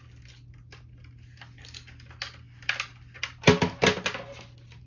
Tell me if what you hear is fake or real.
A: real